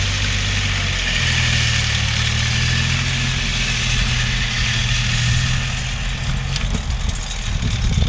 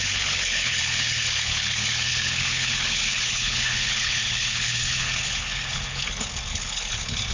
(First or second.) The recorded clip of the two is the first